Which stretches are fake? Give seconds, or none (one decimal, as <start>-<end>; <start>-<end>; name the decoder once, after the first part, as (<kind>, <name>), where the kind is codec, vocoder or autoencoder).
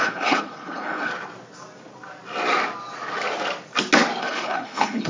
0.0-1.1 (codec, HILCodec); 4.2-5.1